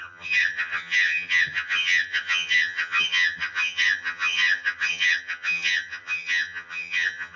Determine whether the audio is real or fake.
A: fake